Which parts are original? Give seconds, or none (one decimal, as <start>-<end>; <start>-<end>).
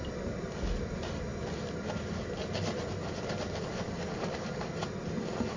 none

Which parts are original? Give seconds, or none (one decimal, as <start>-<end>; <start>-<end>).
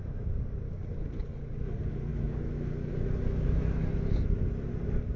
0.0-2.1; 4.7-5.2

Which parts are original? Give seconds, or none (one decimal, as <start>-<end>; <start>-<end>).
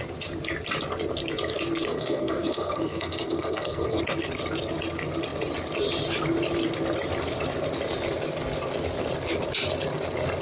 0.0-1.9; 4.0-10.4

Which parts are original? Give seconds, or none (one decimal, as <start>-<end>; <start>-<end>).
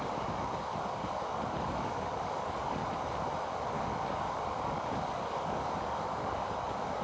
2.8-3.7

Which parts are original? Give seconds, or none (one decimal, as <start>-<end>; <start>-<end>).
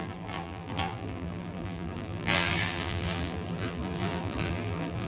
none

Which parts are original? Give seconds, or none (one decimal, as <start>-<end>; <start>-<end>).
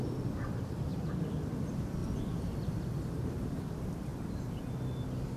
0.0-5.4